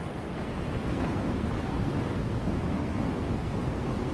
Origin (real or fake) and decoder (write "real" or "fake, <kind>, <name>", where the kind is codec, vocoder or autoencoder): fake, codec, SNAC